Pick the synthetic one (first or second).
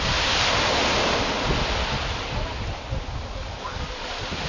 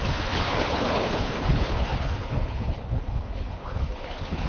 second